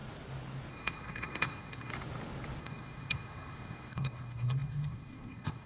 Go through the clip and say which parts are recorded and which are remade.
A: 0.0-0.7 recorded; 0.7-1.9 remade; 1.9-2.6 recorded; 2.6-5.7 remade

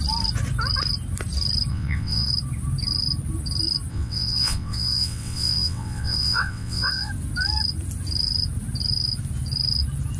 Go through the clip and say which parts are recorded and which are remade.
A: 0.0-1.7 recorded; 1.7-2.3 remade; 2.3-3.9 recorded; 3.9-7.1 remade; 7.1-10.2 recorded

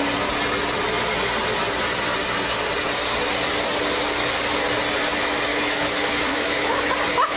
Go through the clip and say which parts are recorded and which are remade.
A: 0.0-5.5 recorded; 5.5-6.8 remade; 6.8-7.4 recorded

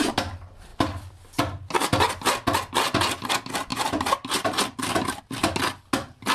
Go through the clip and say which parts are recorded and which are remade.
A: 0.0-3.7 recorded; 3.7-5.2 remade; 5.2-6.3 recorded